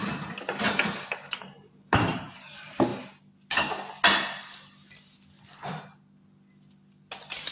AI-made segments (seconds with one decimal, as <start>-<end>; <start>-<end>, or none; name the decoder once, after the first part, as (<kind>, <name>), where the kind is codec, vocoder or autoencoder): 0.0-2.5 (vocoder, BigVGAN v2)